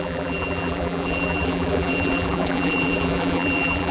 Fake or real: fake